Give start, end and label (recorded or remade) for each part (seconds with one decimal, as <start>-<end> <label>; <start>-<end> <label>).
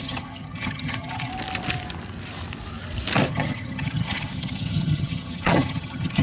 0.0-1.3 remade; 1.3-3.3 recorded; 3.3-6.2 remade